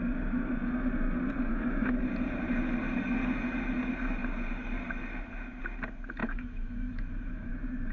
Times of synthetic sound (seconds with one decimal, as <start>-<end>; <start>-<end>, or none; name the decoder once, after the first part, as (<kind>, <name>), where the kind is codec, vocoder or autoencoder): 1.5-2.0 (autoencoder, DAC-VAE); 6.2-7.5